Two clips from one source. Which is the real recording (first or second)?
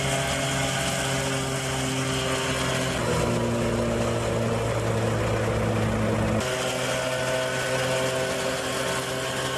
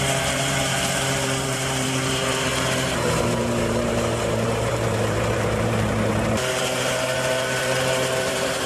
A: first